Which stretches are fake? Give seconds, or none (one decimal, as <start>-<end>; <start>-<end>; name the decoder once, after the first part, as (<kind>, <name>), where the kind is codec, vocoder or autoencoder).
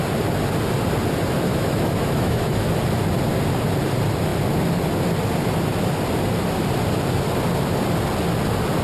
1.5-2.7 (autoencoder, DAC-VAE)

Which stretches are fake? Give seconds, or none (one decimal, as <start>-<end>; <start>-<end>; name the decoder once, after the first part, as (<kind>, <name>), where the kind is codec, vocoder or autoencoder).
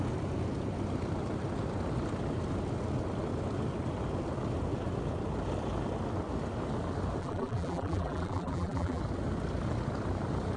7.2-9.0 (vocoder, BigVGAN v2)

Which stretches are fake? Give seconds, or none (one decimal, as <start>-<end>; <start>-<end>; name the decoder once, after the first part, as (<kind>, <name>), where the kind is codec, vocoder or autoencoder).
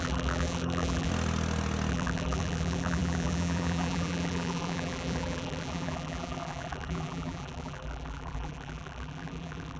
0.0-1.1 (vocoder, BigVGAN v2); 1.9-9.8